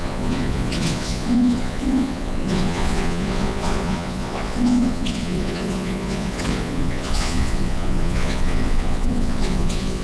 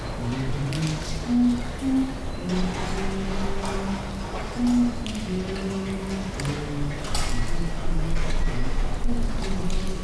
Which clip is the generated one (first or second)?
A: first